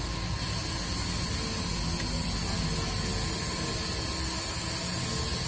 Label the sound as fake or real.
real